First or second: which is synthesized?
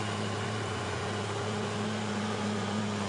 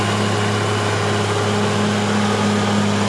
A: first